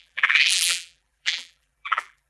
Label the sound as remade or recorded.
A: remade